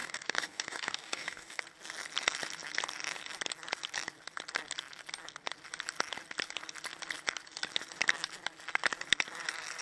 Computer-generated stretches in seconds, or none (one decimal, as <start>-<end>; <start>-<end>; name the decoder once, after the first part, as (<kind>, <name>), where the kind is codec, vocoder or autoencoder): 0.0-1.6 (codec, DAC)